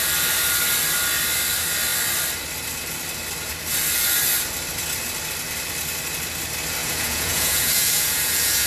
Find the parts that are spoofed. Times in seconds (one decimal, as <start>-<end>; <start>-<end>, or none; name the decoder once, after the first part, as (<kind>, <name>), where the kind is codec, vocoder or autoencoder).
6.8-8.7 (vocoder, Vocos)